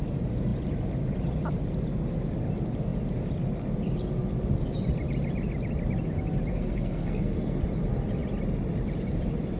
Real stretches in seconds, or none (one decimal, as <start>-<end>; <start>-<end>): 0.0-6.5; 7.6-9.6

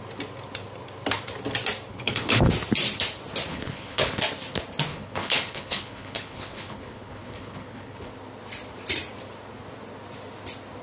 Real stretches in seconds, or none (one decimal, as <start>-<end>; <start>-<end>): 0.0-1.9; 2.5-3.5; 4.2-4.9; 8.1-10.8

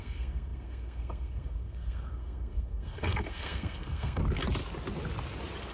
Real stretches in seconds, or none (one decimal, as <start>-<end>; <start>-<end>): 4.2-5.7

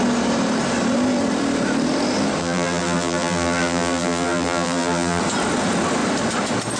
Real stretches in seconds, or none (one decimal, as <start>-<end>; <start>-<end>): 0.0-2.4; 5.2-6.8